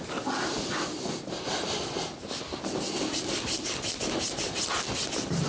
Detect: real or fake real